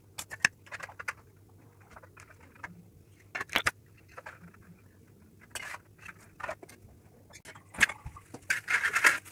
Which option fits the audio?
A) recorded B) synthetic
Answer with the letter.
A